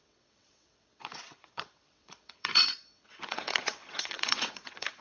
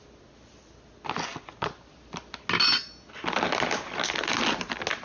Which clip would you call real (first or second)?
second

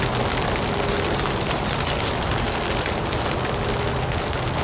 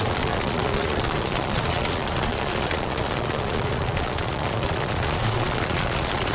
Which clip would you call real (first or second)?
first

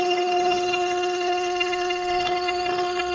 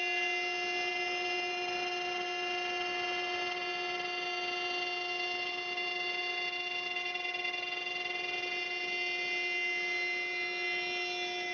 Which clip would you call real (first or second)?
second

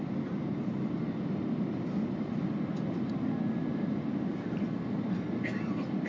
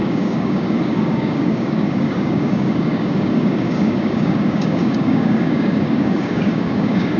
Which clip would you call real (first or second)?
first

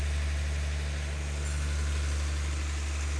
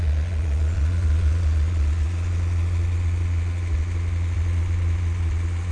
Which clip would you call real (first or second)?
first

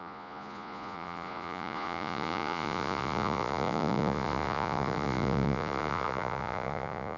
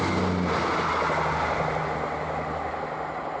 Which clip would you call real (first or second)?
second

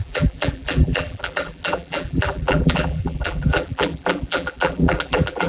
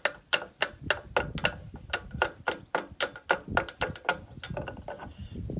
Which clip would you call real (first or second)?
second